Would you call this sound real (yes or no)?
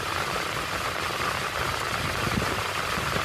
yes